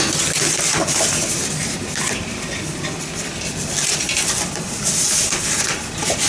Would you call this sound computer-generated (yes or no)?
no